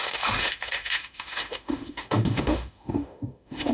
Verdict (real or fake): fake